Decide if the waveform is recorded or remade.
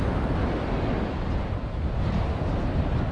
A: recorded